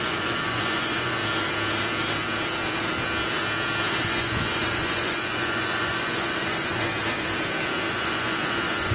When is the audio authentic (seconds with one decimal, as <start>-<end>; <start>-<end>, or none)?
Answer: 1.2-4.0; 6.9-7.9